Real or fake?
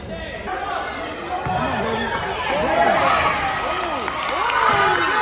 real